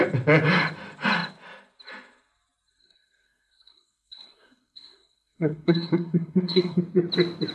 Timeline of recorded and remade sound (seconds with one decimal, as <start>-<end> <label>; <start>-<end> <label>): 0.0-2.8 recorded; 2.8-6.8 remade; 6.8-7.5 recorded